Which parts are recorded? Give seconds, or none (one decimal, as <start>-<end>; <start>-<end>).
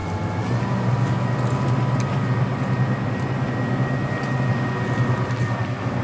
0.0-6.0